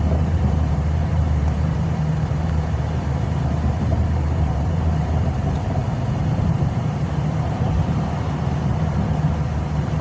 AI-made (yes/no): yes